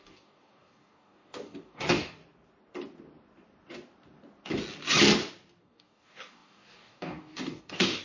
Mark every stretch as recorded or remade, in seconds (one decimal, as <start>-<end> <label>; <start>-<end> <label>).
0.0-2.2 remade; 2.2-5.6 recorded; 5.6-8.0 remade